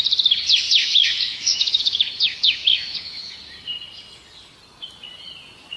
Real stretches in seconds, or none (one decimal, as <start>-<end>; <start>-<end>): 0.0-0.8; 3.3-5.8